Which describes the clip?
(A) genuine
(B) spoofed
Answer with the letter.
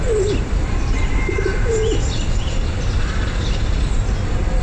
B